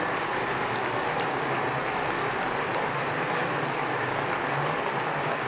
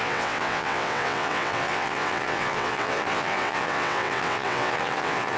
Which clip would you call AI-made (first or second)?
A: second